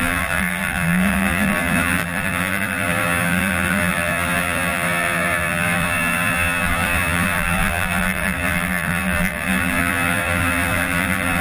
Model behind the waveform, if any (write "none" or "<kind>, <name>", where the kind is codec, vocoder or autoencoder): vocoder, BigVGAN v2